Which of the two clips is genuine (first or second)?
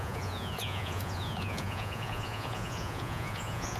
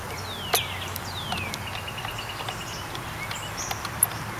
second